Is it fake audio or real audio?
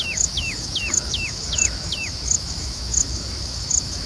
fake